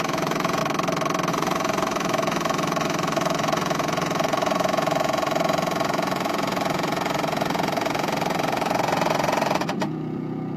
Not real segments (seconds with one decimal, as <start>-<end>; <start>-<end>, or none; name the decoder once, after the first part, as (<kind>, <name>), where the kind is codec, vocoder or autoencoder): 0.0-0.6 (vocoder, Vocos); 1.3-10.6